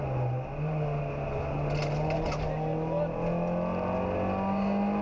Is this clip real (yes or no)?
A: yes